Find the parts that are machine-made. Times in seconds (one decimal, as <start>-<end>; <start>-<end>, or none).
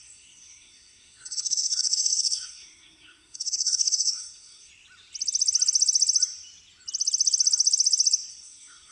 0.0-4.7; 8.3-8.9